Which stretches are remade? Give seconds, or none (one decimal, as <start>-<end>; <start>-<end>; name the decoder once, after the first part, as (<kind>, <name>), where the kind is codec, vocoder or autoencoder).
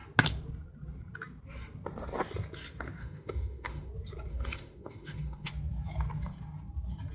3.0-3.9 (autoencoder, DAC-VAE); 4.3-5.5